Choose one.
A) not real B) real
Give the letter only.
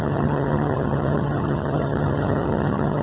A